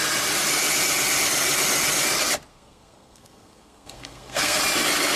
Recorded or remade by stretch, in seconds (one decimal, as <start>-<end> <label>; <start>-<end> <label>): 0.0-2.5 recorded; 2.5-4.6 remade; 4.6-5.2 recorded